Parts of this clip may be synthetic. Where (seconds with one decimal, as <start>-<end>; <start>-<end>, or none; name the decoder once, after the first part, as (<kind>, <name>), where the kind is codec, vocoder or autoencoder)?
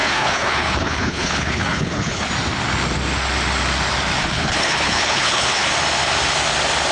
0.0-2.3 (codec, HILCodec); 4.2-5.7